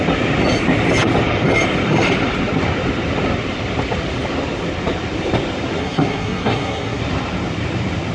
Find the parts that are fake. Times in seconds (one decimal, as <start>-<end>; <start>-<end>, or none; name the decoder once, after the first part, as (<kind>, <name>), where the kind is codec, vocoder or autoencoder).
5.8-7.0 (codec, SNAC)